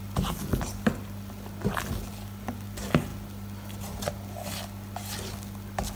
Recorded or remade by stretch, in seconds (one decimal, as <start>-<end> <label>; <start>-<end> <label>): 0.0-6.0 recorded